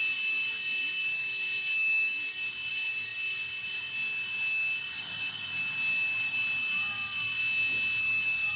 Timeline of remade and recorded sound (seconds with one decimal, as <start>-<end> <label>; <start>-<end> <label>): 0.0-7.4 remade; 7.4-8.0 recorded; 8.0-8.6 remade